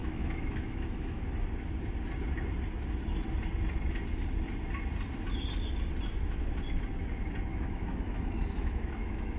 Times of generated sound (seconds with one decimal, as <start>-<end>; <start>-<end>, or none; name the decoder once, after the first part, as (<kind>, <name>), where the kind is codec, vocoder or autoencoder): 0.0-1.2 (autoencoder, DAC-VAE); 7.5-9.4